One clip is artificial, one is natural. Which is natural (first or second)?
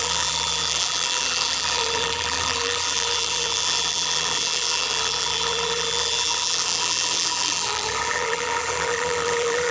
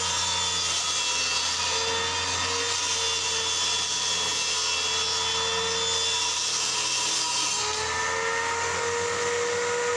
second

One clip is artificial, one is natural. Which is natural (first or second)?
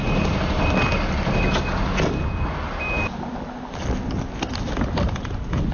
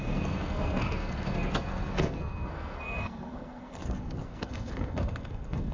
first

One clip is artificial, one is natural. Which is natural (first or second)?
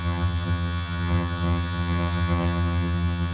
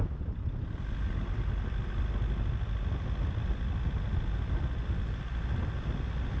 second